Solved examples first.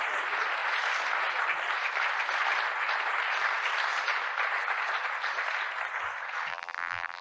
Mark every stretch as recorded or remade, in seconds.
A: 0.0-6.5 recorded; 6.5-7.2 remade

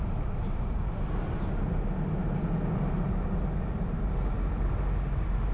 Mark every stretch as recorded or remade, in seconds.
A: 0.0-5.5 recorded

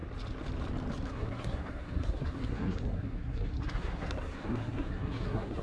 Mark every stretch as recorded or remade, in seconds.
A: 0.0-1.0 recorded; 1.0-5.6 remade

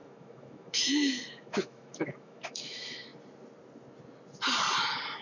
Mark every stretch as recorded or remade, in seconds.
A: 0.0-3.1 remade; 3.1-5.2 recorded

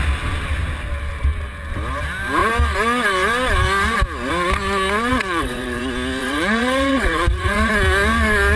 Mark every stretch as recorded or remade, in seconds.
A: 0.0-5.1 recorded; 5.1-5.8 remade; 5.8-6.2 recorded; 6.2-7.7 remade; 7.7-8.6 recorded

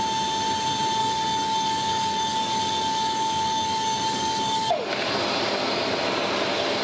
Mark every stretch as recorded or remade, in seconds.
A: 0.0-1.0 recorded; 1.0-4.9 remade; 4.9-6.8 recorded

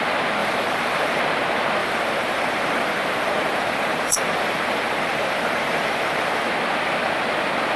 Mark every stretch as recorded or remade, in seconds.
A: 0.0-0.4 recorded; 0.4-1.2 remade; 1.2-1.8 recorded; 1.8-6.5 remade; 6.5-7.8 recorded